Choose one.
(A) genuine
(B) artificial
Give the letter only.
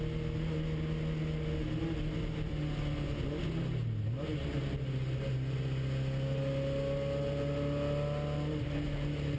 A